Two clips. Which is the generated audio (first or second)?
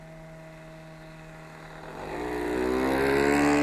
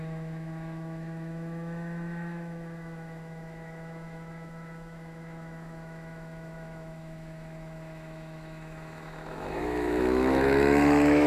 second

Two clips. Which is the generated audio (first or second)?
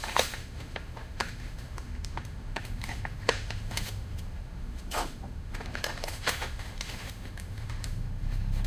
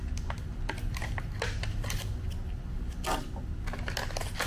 first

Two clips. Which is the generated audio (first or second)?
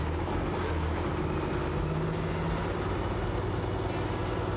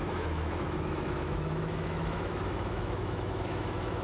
second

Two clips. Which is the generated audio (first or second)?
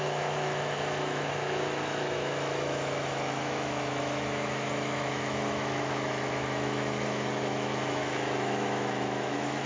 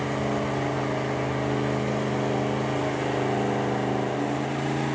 first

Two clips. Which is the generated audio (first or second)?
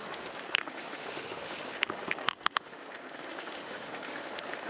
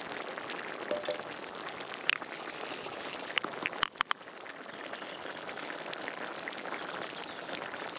first